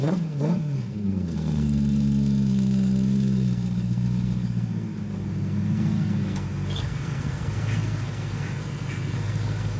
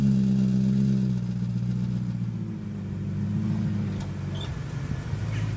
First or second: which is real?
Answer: second